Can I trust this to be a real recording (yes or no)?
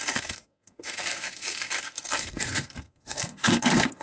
no